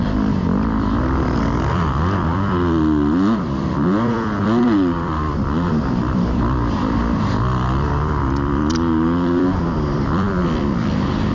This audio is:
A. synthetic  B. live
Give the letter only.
A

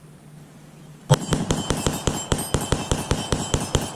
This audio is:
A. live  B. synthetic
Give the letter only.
A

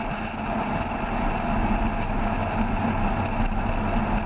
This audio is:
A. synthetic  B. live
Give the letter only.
B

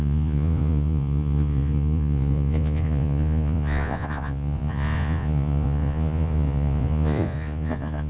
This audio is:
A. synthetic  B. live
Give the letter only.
A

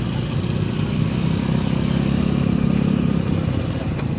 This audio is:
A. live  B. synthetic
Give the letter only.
A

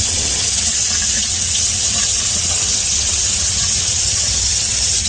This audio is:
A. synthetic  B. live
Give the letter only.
A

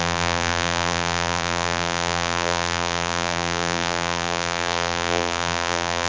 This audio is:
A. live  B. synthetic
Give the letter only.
B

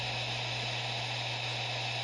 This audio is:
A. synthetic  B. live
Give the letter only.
B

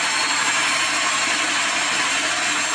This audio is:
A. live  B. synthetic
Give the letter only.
A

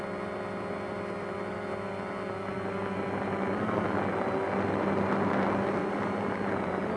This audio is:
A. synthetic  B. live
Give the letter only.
B